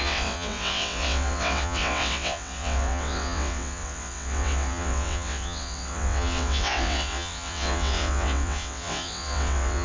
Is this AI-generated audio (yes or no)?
yes